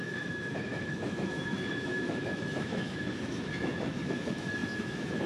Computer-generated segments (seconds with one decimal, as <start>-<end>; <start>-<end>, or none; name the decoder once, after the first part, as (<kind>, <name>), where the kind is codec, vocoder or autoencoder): 0.0-5.3 (autoencoder, DAC-VAE)